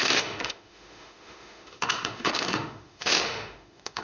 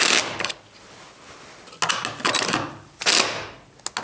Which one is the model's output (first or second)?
first